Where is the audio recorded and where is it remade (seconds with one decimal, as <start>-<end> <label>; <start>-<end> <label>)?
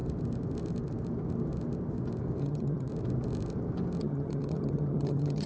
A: 0.0-2.4 recorded; 2.4-2.9 remade; 2.9-4.0 recorded; 4.0-5.5 remade